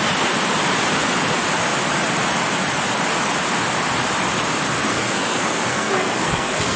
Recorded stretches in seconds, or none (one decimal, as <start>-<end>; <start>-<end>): 0.0-4.9